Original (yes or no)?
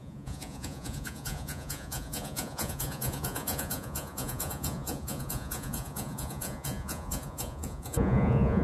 no